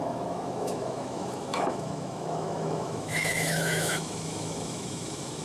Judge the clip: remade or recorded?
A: remade